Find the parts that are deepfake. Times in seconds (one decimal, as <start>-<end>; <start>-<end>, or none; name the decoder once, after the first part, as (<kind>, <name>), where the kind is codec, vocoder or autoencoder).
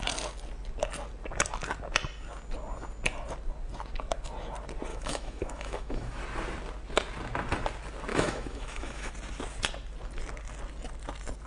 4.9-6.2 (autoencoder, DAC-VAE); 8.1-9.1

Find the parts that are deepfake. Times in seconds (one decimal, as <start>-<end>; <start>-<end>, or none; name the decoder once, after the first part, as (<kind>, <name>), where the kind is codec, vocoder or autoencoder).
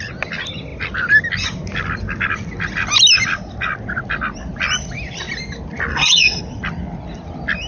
5.9-6.4 (vocoder, WaveNeXt)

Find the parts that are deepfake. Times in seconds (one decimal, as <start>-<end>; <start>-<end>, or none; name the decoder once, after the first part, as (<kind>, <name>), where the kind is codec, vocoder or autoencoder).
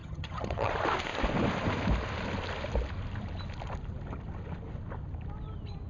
0.0-0.7 (vocoder, HiFi-GAN)